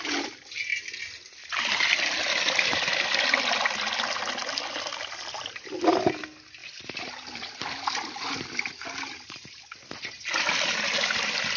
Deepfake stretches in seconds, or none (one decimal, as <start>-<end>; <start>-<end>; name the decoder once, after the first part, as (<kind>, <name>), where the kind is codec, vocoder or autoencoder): none